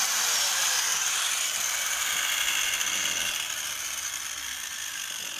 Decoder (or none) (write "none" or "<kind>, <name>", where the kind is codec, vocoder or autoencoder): vocoder, BigVGAN v2